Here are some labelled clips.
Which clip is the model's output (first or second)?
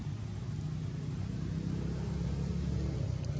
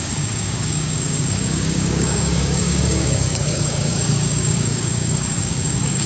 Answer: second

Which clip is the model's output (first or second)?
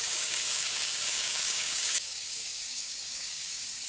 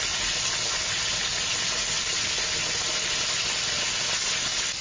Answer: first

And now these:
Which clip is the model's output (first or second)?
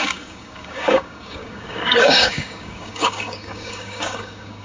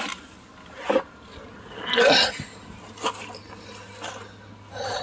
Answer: first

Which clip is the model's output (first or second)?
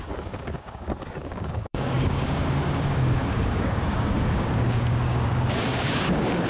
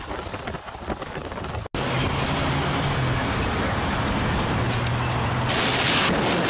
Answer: first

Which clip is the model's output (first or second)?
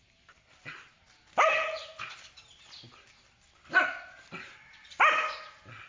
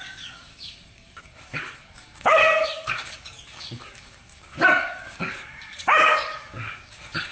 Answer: second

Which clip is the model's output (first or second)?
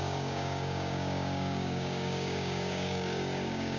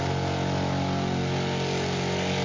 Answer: first